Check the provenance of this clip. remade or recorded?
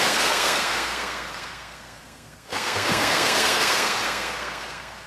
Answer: remade